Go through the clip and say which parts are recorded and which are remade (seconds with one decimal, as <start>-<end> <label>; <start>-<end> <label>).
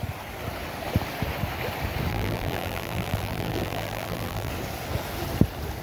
0.0-2.1 recorded; 2.1-4.5 remade; 4.5-5.8 recorded